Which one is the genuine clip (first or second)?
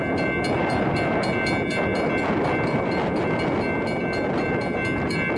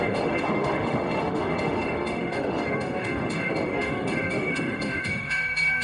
first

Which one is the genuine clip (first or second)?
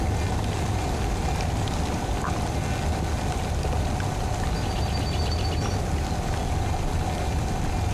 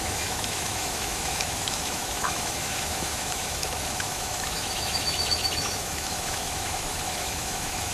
first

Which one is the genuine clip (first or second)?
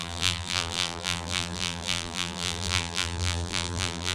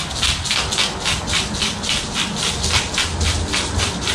second